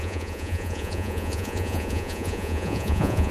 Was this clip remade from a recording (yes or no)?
yes